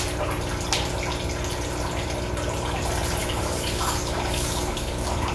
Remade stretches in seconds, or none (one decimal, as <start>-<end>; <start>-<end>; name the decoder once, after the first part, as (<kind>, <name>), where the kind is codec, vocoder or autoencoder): 3.2-5.3 (codec, DAC)